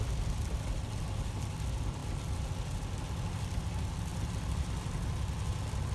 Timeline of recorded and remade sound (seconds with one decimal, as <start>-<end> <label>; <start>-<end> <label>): 0.0-5.9 recorded